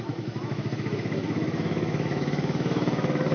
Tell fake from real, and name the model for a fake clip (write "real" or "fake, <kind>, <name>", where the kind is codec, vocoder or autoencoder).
fake, autoencoder, DAC-VAE